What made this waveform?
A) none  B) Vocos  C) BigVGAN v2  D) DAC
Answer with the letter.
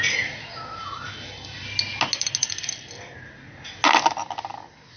A